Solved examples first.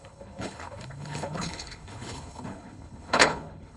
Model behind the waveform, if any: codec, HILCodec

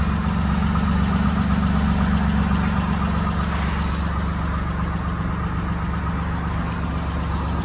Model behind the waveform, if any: none